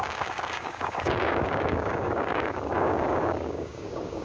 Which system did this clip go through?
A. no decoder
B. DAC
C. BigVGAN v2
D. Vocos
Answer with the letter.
B